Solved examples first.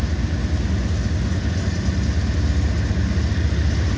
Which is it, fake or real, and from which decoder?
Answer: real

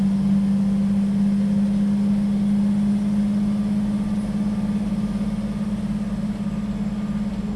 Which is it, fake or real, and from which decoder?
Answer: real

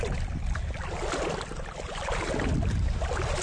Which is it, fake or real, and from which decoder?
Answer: real